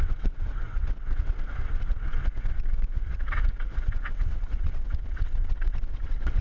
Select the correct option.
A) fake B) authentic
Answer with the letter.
A